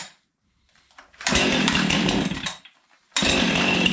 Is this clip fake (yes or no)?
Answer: yes